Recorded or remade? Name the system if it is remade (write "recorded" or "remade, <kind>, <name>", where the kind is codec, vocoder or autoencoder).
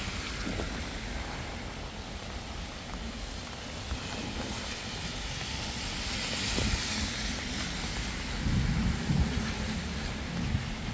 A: recorded